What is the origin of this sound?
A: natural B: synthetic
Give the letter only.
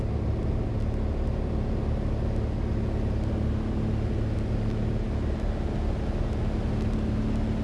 A